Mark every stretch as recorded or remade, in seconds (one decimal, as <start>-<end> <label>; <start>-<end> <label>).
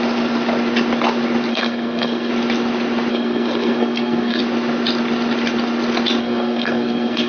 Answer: 0.0-1.5 recorded; 1.5-2.3 remade; 2.3-3.1 recorded; 3.1-4.4 remade; 4.4-6.2 recorded; 6.2-7.3 remade